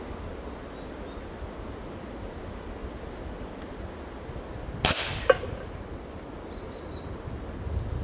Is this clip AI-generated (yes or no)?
no